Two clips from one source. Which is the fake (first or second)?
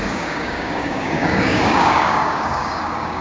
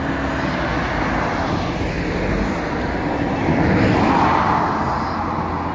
first